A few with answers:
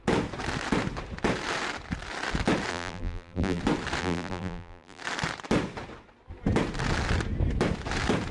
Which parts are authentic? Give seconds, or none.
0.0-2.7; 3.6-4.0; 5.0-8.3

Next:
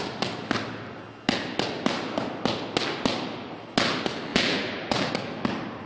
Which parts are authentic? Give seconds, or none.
0.0-4.3; 5.1-5.9

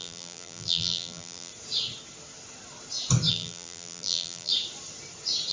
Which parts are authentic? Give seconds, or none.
1.5-3.3; 4.5-5.5

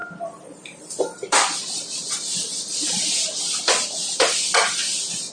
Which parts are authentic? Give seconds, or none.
3.2-4.0